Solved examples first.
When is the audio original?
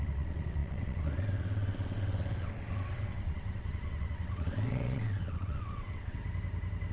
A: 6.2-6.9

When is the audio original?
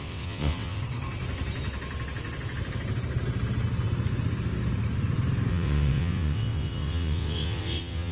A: 0.8-5.5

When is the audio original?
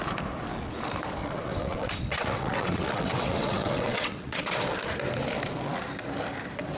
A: 0.0-1.2; 4.5-6.8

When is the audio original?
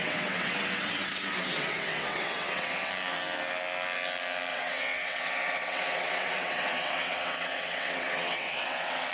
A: 2.9-4.5